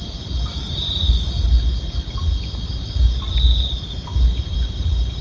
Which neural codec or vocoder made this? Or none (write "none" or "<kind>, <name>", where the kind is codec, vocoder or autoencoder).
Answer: none